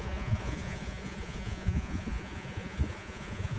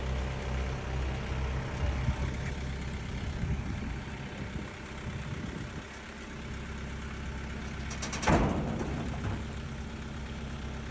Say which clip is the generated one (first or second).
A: first